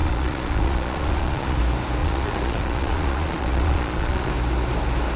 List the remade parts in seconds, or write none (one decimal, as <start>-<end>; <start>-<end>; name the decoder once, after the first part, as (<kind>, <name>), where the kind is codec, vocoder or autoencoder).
0.0-1.6 (vocoder, Vocos); 2.0-4.3